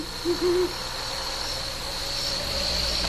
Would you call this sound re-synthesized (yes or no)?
no